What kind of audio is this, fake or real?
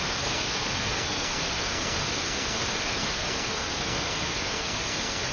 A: fake